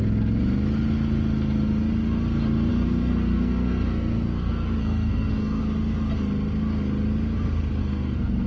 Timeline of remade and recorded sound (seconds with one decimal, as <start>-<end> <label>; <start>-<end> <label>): 0.0-2.7 recorded; 2.7-5.6 remade; 5.6-7.8 recorded; 7.8-8.5 remade